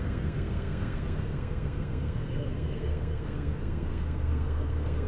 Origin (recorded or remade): remade